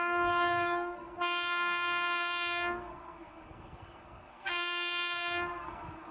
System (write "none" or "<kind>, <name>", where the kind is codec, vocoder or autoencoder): codec, SNAC